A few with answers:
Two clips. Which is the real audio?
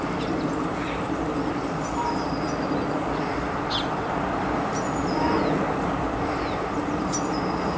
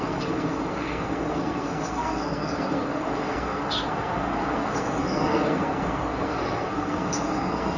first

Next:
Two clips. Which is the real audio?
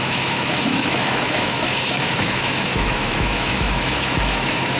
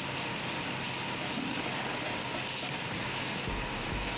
second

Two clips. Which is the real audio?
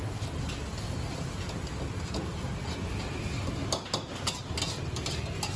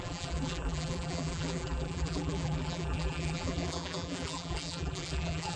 first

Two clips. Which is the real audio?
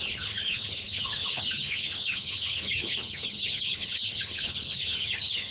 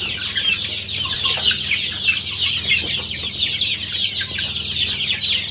second